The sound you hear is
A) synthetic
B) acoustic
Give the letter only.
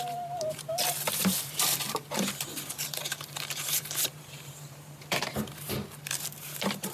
A